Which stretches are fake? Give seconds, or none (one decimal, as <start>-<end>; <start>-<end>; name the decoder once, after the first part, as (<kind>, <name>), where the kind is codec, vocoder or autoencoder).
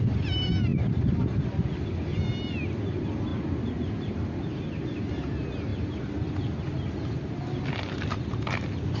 none